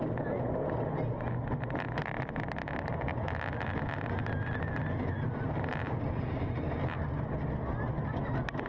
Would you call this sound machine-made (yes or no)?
no